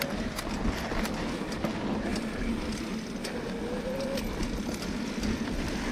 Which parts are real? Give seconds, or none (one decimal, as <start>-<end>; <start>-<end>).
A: 0.0-5.9